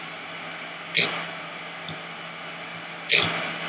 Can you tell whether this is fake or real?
real